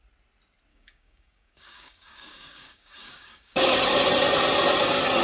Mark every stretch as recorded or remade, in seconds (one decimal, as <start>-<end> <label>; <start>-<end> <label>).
0.0-0.7 recorded; 0.7-3.8 remade; 3.8-5.2 recorded